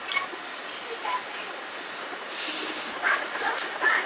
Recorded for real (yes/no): yes